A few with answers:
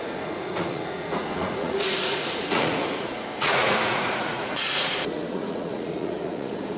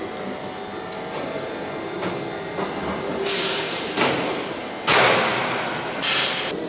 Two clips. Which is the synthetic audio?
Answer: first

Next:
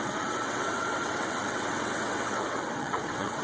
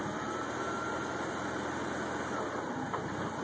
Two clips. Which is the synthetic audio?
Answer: first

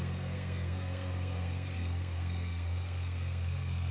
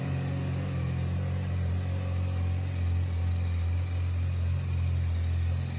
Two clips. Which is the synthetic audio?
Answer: first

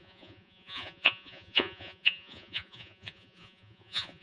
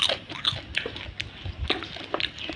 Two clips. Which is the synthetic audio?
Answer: first